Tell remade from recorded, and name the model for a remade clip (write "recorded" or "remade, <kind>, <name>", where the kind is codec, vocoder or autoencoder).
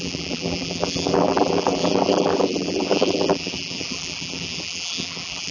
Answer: remade, vocoder, BigVGAN v2